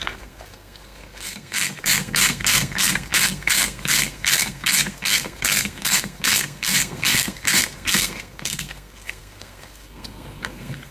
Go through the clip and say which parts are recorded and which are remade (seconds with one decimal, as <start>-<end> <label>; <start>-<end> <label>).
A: 0.0-10.9 remade